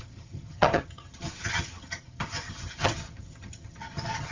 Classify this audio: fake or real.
fake